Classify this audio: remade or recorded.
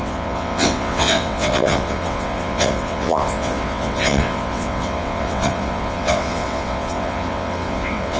remade